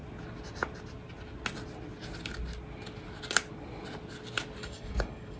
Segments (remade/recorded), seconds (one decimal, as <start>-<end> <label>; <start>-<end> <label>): 0.0-4.6 recorded; 4.6-5.4 remade